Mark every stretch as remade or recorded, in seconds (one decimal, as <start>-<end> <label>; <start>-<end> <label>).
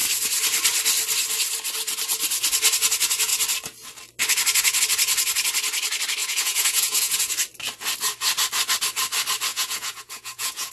0.0-6.2 recorded; 6.2-7.3 remade; 7.3-9.5 recorded; 9.5-10.7 remade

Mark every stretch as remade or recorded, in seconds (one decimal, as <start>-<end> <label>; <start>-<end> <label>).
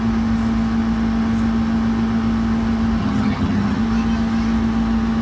0.0-3.0 recorded; 3.0-3.8 remade; 3.8-5.2 recorded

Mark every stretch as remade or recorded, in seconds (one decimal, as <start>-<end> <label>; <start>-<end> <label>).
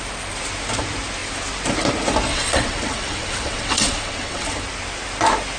0.0-2.3 recorded; 2.3-4.6 remade; 4.6-5.6 recorded